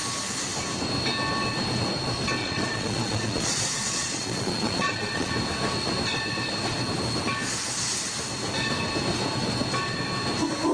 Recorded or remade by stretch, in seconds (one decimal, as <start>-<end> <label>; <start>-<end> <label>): 0.0-2.4 recorded; 2.4-5.3 remade; 5.3-10.7 recorded